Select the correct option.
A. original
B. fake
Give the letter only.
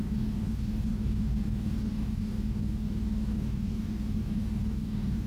B